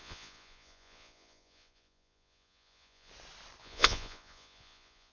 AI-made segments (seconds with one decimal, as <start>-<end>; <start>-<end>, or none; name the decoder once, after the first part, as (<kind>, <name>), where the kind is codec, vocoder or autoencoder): 0.0-3.1 (vocoder, Vocos); 3.6-5.1